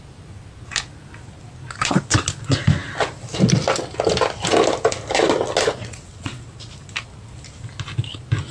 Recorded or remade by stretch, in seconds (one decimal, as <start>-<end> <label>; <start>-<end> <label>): 0.0-5.8 recorded; 5.8-6.5 remade; 6.5-8.5 recorded